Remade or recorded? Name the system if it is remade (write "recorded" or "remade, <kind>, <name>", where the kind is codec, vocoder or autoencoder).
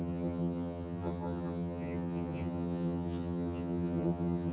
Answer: remade, vocoder, HiFi-GAN